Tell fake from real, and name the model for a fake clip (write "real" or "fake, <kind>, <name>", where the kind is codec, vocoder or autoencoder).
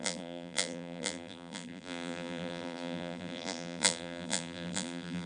fake, vocoder, BigVGAN v2